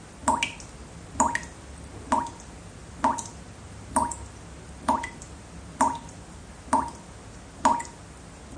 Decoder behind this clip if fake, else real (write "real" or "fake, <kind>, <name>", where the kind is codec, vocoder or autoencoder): real